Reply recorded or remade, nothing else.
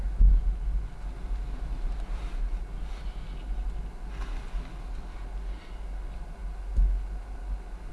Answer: recorded